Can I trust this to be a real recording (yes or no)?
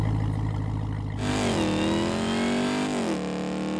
yes